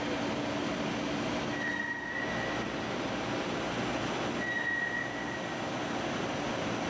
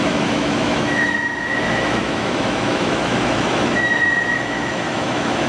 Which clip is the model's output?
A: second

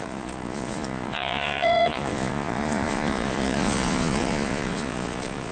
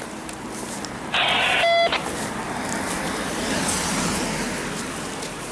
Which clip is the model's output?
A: first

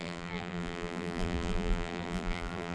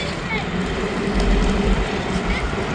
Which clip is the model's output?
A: first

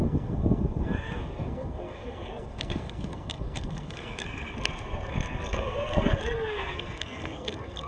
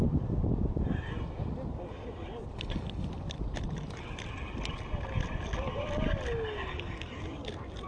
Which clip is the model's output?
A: first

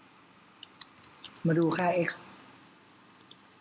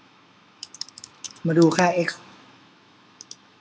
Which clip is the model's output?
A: second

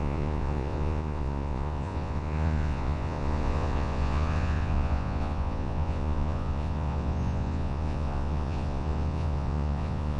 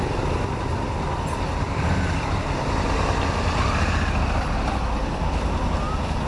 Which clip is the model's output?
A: first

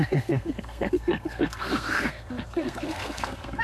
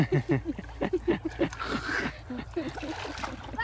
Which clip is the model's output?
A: first